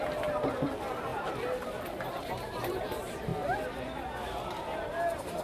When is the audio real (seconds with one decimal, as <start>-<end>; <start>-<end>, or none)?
3.3-4.5